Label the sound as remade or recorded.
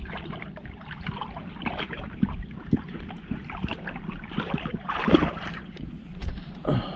remade